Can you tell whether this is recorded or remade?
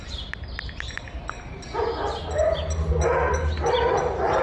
recorded